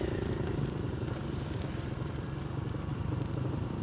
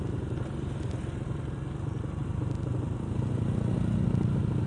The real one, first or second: second